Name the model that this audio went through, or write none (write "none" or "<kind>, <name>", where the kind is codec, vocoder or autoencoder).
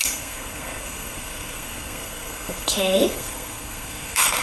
codec, SNAC